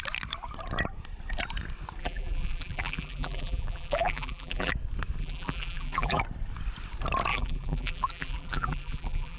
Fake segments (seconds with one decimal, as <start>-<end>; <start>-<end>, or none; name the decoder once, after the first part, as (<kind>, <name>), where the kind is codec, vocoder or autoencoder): 2.0-4.7 (vocoder, BigVGAN v2); 5.2-6.2; 7.3-9.4